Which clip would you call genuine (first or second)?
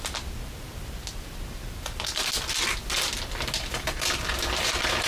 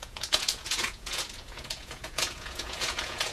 first